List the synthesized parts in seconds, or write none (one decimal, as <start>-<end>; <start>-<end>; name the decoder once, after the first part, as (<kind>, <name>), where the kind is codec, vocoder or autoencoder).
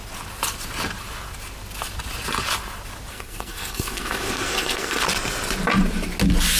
3.1-5.0 (codec, SNAC)